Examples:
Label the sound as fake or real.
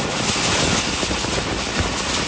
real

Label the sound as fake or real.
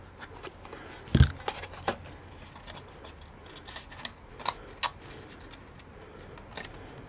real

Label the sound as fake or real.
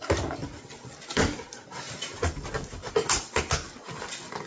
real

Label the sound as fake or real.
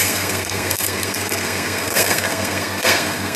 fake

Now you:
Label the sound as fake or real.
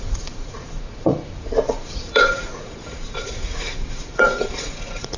fake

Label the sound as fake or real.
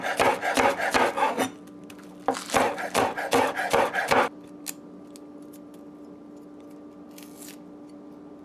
real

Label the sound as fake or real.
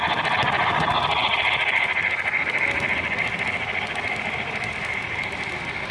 real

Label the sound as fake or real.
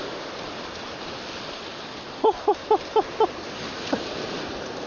real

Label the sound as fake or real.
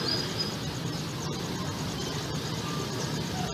real